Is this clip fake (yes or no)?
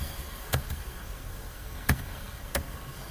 yes